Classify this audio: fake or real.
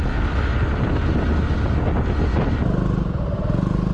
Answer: real